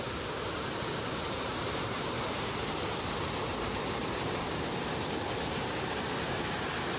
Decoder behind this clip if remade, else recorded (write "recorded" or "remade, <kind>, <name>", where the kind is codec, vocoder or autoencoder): remade, vocoder, BigVGAN v2